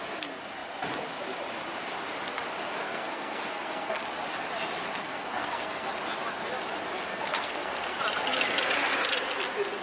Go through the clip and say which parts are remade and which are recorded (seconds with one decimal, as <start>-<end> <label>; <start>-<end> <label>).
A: 0.0-2.8 recorded; 2.8-4.0 remade; 4.0-5.0 recorded; 5.0-5.9 remade; 5.9-7.1 recorded; 7.1-8.0 remade; 8.0-9.8 recorded